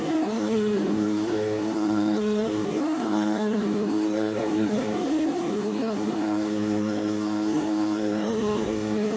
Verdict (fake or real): fake